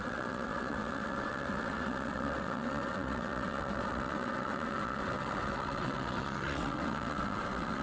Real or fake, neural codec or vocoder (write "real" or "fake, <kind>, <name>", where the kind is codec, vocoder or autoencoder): fake, vocoder, WaveNeXt